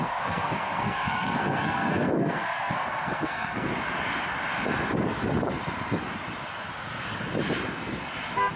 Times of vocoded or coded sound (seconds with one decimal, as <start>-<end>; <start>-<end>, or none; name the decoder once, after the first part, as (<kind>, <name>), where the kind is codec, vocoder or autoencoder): 0.0-3.7 (codec, SNAC)